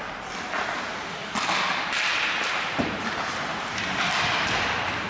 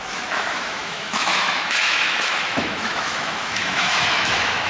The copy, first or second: second